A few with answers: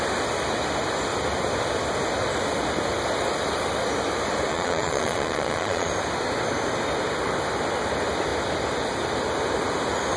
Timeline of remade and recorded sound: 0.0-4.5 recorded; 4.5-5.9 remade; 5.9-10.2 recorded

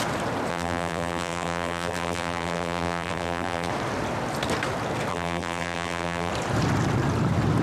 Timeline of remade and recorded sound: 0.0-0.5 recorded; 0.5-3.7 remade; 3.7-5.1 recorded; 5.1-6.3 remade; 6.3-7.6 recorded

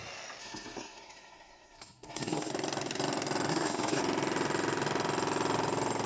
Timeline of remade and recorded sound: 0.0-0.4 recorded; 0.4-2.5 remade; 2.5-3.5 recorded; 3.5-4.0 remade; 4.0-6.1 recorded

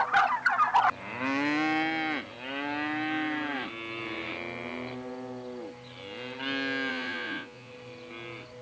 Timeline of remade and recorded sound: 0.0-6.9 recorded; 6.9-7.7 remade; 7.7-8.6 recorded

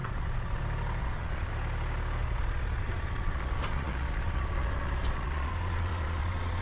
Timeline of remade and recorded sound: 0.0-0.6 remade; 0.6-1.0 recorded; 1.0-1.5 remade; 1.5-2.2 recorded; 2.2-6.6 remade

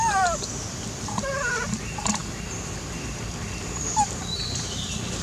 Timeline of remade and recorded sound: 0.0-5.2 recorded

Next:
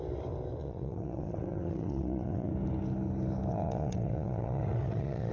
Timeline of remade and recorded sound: 0.0-0.6 recorded; 0.6-2.5 remade; 2.5-3.5 recorded; 3.5-5.3 remade